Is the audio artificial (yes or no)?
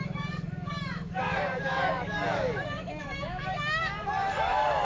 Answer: yes